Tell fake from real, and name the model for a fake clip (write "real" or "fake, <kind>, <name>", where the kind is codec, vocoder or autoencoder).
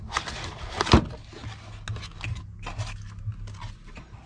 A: real